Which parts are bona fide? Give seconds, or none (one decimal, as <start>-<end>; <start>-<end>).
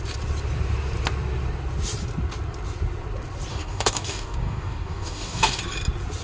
0.0-3.5; 5.6-6.2